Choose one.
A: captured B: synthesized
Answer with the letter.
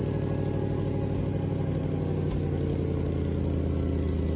A